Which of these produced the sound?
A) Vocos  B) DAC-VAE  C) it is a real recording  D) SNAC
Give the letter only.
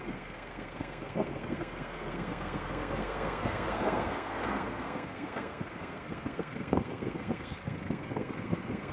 D